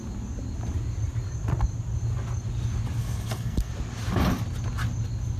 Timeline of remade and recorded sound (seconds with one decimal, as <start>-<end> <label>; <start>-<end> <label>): 0.0-3.0 recorded; 3.0-3.7 remade; 3.7-5.4 recorded